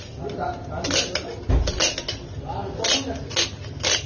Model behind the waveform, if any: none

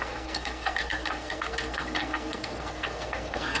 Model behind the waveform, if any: codec, SNAC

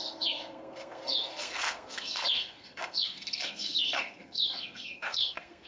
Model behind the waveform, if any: codec, SNAC